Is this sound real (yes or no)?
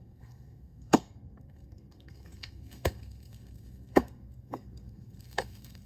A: no